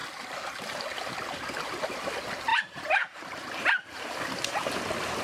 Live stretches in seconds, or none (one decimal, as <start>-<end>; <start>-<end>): 0.0-2.5; 4.1-5.2